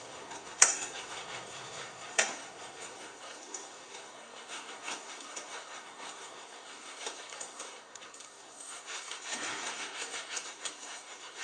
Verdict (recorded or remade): remade